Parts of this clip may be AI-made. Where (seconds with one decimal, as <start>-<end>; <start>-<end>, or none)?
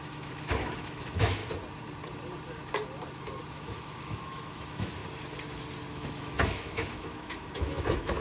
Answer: 0.0-1.4; 3.6-5.0; 5.9-8.2